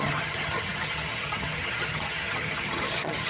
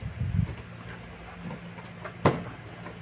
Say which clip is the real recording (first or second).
second